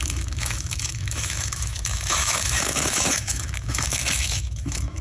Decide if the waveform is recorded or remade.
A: remade